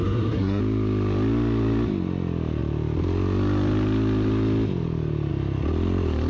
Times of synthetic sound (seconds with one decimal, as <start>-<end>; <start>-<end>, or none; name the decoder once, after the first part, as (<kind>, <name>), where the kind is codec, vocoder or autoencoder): 0.0-0.6 (codec, SNAC)